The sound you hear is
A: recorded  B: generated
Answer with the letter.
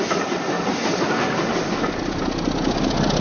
A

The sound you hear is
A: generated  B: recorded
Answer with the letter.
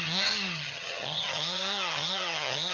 A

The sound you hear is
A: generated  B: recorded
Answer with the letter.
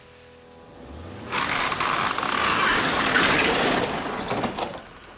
B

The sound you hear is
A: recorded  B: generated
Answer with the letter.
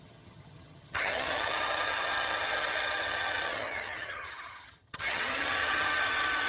B